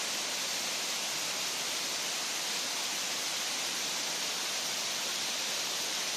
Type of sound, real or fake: real